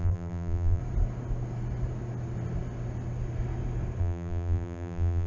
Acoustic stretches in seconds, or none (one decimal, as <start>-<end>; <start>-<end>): 0.8-4.0